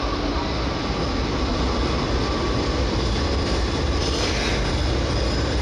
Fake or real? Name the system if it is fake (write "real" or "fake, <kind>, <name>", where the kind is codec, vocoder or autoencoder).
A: real